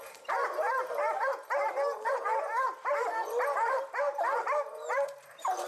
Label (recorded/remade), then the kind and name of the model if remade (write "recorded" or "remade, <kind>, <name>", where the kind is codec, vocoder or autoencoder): remade, vocoder, BigVGAN v2